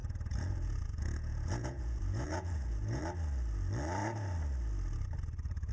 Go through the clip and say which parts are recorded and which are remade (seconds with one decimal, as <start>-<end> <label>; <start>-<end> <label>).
0.0-3.0 remade; 3.0-5.7 recorded